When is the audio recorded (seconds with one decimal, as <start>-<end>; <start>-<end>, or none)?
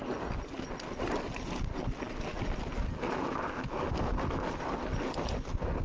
0.0-5.8